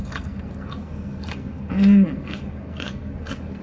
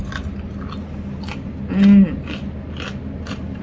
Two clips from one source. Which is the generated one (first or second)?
first